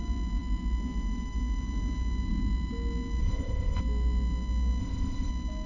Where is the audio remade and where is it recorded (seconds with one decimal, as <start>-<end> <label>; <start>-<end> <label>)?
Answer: 0.0-3.2 recorded; 3.2-3.8 remade; 3.8-4.8 recorded; 4.8-5.3 remade; 5.3-5.7 recorded